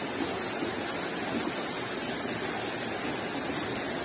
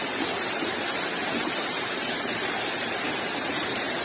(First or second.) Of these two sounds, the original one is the first